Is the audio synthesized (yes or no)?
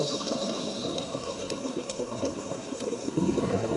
yes